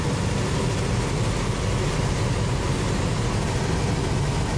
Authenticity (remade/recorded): recorded